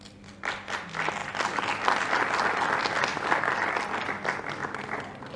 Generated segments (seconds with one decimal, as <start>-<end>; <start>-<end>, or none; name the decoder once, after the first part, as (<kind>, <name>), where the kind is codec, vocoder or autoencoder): none